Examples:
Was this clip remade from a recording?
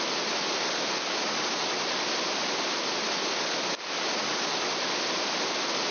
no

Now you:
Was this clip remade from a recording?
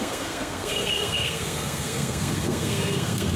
yes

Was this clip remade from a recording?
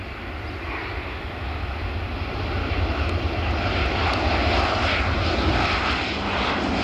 no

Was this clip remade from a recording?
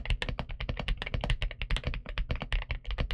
no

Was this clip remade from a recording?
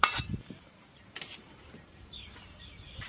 yes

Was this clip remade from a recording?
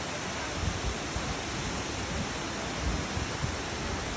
no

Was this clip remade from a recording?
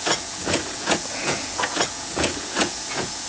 yes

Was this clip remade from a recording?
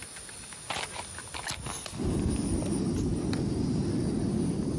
no